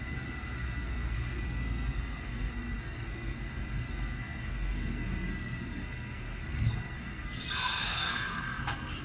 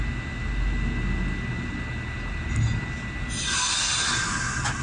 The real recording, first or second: second